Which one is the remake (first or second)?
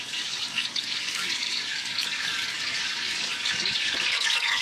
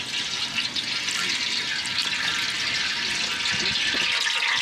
first